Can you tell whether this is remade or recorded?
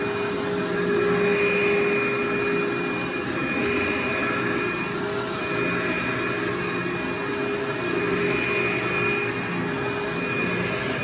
recorded